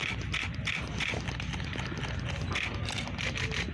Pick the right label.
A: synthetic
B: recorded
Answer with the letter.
B